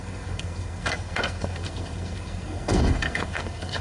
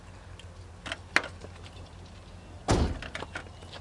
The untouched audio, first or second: second